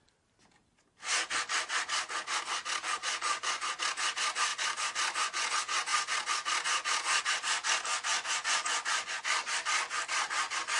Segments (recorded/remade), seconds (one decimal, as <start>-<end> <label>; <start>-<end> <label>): 0.0-3.0 recorded; 3.0-3.7 remade; 3.7-4.5 recorded; 4.5-5.5 remade; 5.5-8.1 recorded; 8.1-9.5 remade; 9.5-10.8 recorded